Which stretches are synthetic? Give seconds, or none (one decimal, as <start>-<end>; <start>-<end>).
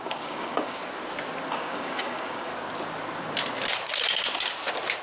0.0-0.8; 1.5-2.5